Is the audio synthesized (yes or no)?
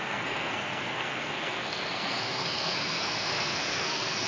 yes